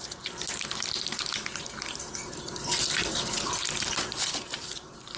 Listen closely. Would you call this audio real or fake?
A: real